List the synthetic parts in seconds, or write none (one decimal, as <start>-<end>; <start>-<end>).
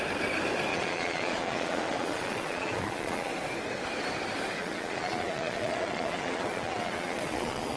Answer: 0.7-3.3; 4.6-7.8